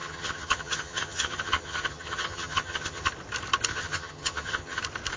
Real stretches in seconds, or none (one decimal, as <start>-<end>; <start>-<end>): 3.1-3.7; 4.8-5.2